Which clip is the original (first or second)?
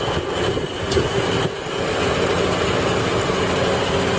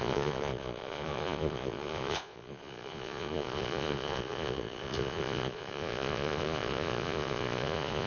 first